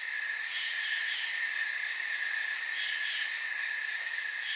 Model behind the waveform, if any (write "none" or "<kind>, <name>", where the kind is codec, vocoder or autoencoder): none